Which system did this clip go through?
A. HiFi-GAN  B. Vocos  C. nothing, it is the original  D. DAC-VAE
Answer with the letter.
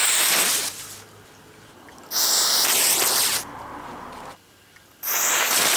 C